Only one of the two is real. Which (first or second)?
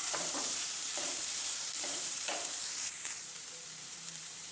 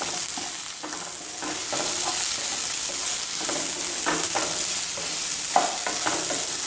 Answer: second